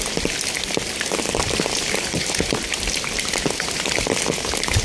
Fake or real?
real